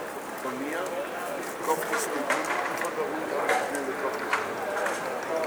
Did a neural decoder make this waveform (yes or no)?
no